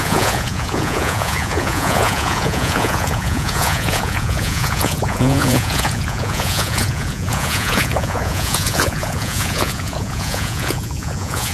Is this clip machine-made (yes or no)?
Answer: yes